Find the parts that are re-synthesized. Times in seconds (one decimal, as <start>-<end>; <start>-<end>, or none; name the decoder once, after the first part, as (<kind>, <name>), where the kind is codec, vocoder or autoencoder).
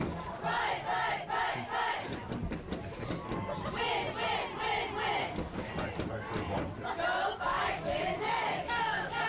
0.0-0.4 (codec, DAC); 5.2-5.7; 7.4-9.3